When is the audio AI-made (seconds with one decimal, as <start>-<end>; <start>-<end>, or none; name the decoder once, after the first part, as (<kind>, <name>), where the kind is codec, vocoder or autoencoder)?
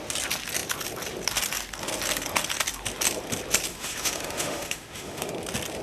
3.7-5.3 (autoencoder, DAC-VAE)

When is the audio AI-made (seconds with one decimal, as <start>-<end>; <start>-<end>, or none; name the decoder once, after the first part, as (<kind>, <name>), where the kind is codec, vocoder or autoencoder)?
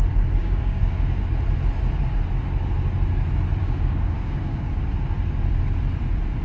0.4-1.2 (codec, DAC); 3.6-4.7